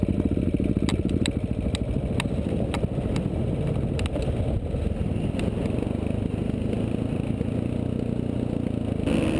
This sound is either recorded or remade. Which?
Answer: recorded